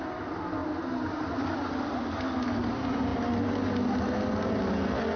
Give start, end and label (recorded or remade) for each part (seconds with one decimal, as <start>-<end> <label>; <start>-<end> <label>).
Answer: 0.0-5.2 recorded